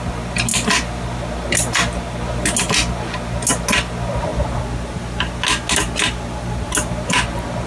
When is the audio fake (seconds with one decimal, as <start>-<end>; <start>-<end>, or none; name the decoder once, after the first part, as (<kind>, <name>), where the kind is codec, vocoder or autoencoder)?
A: none